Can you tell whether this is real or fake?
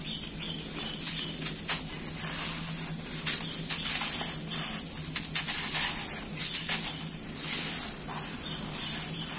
real